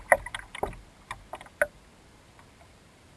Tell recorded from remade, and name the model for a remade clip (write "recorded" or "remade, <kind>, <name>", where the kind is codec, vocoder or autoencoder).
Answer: recorded